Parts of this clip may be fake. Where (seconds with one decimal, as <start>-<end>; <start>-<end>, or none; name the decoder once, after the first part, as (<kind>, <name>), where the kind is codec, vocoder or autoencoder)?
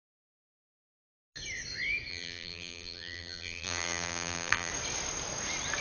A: 0.0-1.0 (vocoder, BigVGAN v2); 2.1-4.7